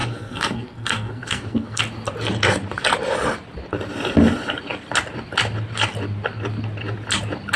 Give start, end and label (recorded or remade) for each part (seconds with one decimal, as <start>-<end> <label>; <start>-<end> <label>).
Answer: 0.0-1.8 remade; 1.8-7.6 recorded